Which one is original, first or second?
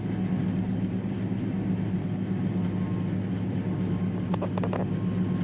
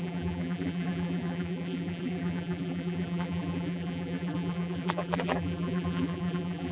first